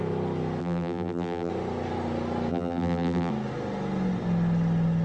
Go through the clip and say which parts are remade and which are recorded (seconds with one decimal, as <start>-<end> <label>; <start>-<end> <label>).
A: 0.0-0.6 recorded; 0.6-1.5 remade; 1.5-2.5 recorded; 2.5-3.3 remade; 3.3-5.0 recorded